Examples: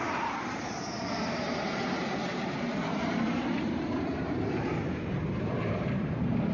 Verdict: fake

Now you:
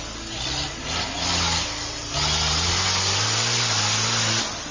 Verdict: real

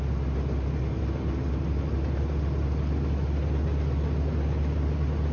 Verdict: real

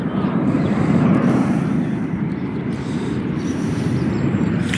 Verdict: fake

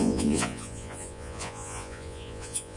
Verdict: fake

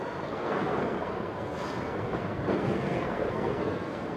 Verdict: fake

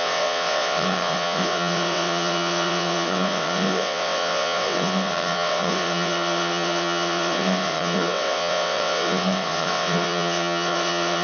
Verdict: fake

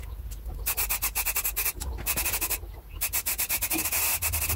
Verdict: real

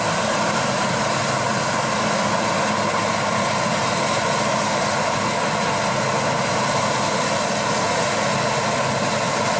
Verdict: real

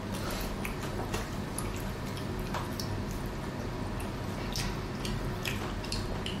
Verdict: real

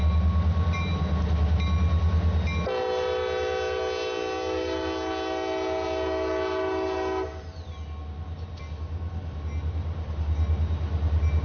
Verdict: real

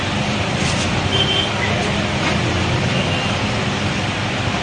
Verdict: real